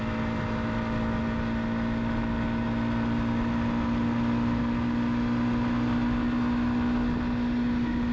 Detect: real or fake real